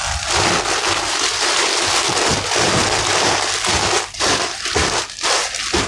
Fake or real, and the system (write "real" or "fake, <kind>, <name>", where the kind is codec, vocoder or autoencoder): real